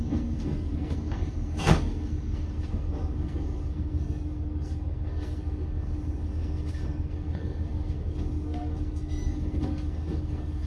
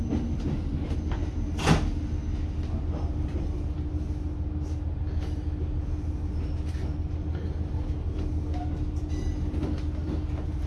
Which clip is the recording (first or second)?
second